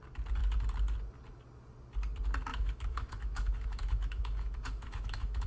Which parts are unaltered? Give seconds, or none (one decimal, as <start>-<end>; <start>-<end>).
0.0-2.5